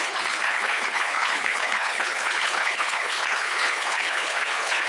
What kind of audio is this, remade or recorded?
remade